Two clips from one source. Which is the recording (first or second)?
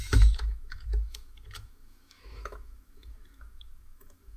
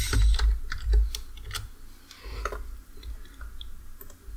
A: second